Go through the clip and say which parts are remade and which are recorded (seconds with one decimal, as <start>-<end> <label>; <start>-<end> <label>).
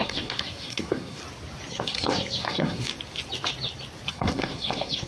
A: 0.0-1.2 remade; 1.2-1.7 recorded; 1.7-2.9 remade; 2.9-4.1 recorded; 4.1-5.1 remade